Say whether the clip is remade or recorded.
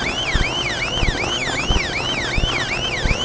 recorded